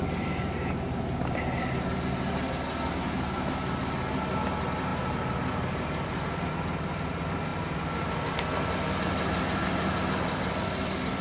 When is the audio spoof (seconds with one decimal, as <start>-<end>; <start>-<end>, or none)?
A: none